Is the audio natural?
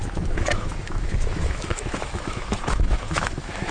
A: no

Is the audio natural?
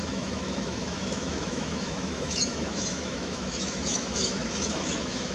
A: no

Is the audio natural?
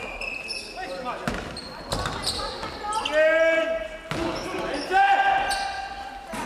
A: yes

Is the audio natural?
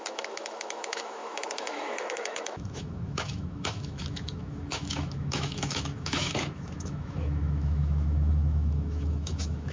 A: no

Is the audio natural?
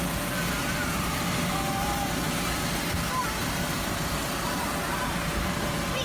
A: yes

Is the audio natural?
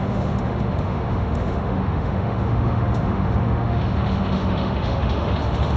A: no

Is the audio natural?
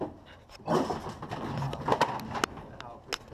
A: yes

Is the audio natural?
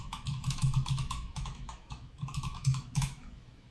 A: no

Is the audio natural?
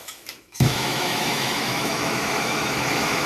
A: no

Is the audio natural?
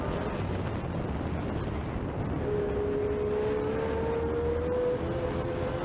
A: yes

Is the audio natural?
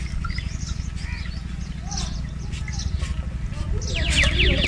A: yes